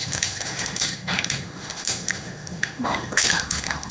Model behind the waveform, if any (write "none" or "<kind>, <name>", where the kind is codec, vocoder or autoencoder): autoencoder, DAC-VAE